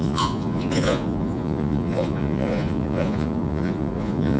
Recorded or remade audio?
remade